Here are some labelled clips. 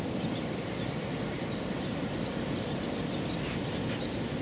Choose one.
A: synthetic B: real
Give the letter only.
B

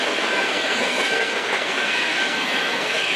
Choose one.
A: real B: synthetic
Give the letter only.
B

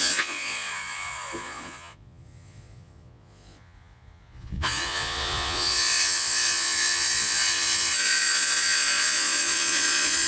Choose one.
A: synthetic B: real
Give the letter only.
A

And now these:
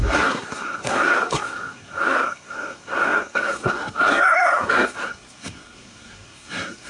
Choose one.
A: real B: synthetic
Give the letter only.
B